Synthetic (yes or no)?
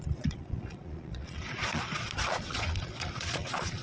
yes